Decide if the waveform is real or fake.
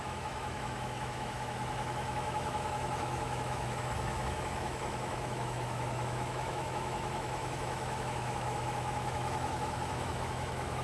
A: fake